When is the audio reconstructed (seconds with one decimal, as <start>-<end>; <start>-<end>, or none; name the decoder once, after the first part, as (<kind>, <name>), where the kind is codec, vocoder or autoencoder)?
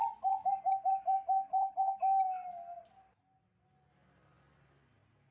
1.5-2.0 (codec, HILCodec)